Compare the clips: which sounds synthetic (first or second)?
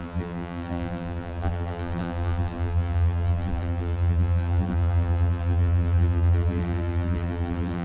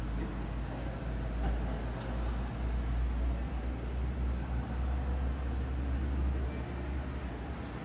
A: first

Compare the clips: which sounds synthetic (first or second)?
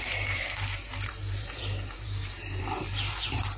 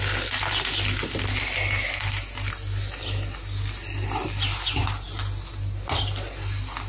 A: first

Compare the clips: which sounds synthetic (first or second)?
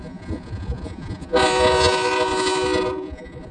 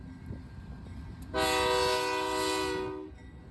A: first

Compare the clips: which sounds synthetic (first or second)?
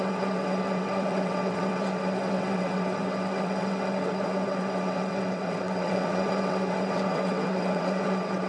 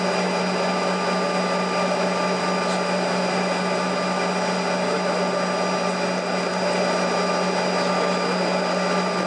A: first